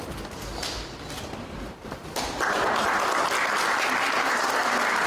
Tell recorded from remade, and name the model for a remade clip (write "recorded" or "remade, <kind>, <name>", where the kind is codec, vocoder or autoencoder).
recorded